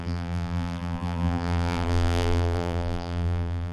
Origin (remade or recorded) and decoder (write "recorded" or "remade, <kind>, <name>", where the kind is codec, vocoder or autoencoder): remade, vocoder, BigVGAN v2